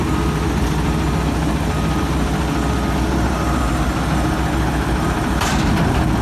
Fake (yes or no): no